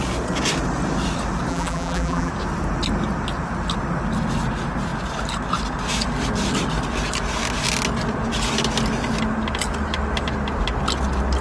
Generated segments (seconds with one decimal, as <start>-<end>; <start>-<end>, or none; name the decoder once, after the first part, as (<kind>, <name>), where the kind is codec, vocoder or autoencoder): 1.5-2.3 (vocoder, BigVGAN v2)

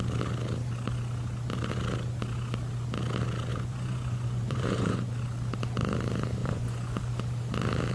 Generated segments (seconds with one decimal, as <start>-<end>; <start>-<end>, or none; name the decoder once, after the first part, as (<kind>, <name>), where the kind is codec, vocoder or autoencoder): 3.5-5.1 (vocoder, Vocos); 6.4-7.0